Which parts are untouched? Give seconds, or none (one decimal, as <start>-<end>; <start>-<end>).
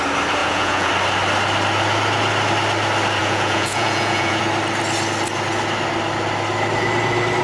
0.0-0.4; 0.9-3.2; 4.4-7.4